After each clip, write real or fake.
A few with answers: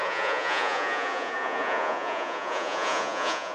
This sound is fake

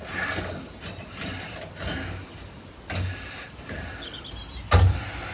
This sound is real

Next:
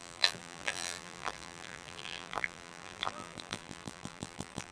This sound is fake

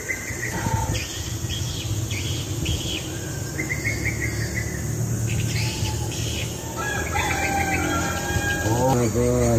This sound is real